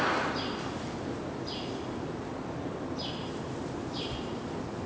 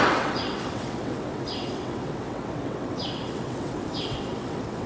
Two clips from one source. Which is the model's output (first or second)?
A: second